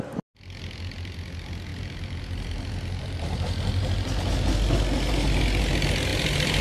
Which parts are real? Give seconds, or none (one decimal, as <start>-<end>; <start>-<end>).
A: 0.0-1.7; 3.8-6.1